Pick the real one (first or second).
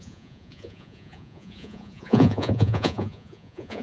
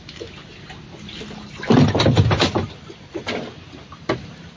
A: second